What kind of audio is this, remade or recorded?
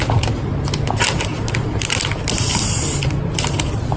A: recorded